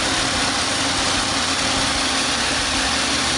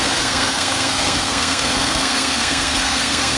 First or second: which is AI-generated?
second